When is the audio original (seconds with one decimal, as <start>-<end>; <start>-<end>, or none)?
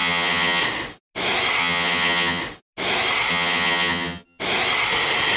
0.6-1.6; 2.4-3.3; 4.4-5.4